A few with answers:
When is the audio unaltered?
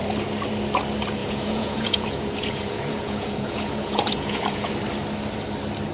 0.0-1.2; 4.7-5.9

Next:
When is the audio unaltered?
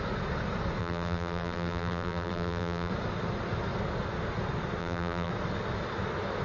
0.0-0.8; 2.9-4.8; 5.3-6.4